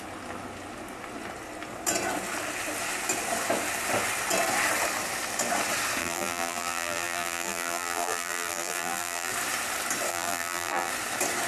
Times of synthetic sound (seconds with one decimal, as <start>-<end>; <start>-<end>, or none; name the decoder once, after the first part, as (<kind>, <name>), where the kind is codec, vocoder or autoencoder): 6.0-9.3 (vocoder, BigVGAN v2); 10.1-10.9

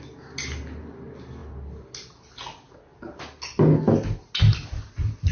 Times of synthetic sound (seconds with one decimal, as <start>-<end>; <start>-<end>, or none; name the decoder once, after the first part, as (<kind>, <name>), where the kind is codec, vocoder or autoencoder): none

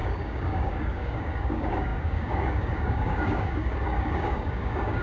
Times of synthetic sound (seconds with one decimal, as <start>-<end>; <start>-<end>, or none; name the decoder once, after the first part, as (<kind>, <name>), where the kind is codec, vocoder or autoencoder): 0.0-5.0 (codec, DAC)

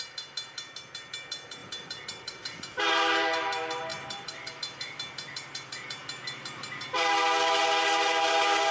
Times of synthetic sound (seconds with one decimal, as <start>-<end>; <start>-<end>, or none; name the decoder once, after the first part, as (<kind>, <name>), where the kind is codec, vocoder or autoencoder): 1.6-2.9 (vocoder, BigVGAN v2); 3.9-4.5

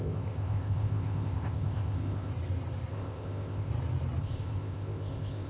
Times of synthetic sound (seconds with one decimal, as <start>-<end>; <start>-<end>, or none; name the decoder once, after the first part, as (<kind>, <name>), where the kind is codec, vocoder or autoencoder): 0.0-2.3 (codec, ZipCodec); 2.9-3.7; 4.2-5.5